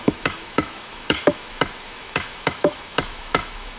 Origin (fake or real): fake